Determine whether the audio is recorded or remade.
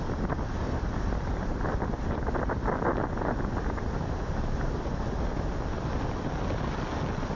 recorded